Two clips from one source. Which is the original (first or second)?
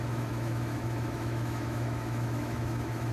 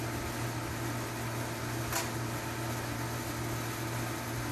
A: second